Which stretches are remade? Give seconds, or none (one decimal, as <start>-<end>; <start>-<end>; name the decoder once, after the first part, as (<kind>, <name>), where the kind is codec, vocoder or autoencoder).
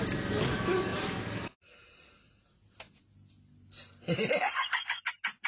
0.9-2.3 (vocoder, BigVGAN v2)